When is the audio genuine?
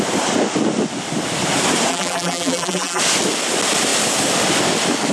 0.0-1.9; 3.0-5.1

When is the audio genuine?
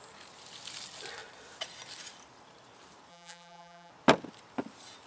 0.0-3.1; 3.9-5.1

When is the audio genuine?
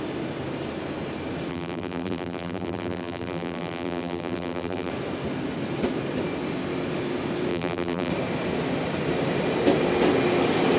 0.0-1.5; 4.9-7.5; 8.1-10.8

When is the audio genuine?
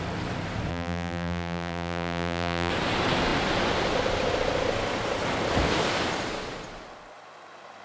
0.0-0.7; 2.7-7.8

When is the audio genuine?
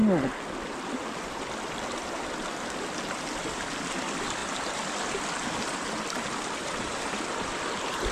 0.0-6.6; 7.5-8.1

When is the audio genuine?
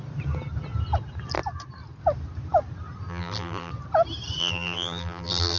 0.0-3.1; 3.7-4.4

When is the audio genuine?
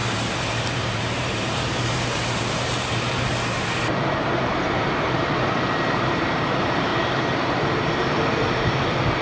6.9-7.6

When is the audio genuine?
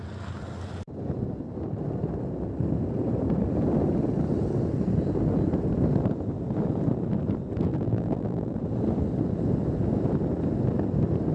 0.0-7.7; 8.6-11.3